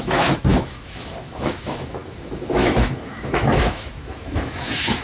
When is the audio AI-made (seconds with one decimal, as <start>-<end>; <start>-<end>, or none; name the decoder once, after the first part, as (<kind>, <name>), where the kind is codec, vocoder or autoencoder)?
0.0-5.0 (autoencoder, DAC-VAE)